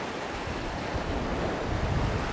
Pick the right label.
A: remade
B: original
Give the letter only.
B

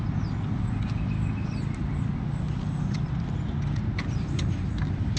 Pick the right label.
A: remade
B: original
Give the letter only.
B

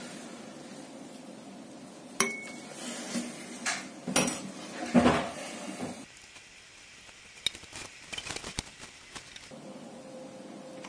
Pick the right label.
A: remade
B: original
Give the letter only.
B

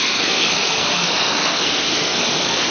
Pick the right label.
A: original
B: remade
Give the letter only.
B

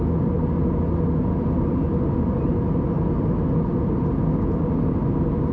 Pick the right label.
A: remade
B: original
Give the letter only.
B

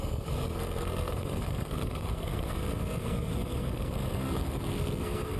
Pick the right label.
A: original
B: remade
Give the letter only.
B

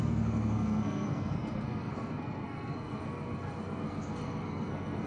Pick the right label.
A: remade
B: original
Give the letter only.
A